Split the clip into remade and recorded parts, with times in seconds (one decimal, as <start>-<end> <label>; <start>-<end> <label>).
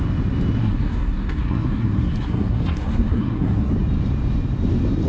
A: 0.0-0.6 recorded; 0.6-3.7 remade; 3.7-5.1 recorded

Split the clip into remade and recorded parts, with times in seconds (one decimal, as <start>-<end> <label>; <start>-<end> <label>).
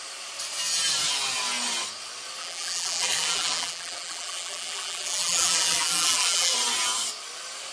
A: 0.0-2.4 recorded; 2.4-6.5 remade; 6.5-7.7 recorded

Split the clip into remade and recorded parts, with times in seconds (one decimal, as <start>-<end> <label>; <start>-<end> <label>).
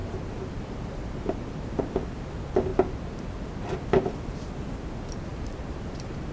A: 0.0-5.3 recorded; 5.3-6.3 remade